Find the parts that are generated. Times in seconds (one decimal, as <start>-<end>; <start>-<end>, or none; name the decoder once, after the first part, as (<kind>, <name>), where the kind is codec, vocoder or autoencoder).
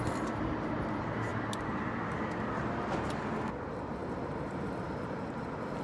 none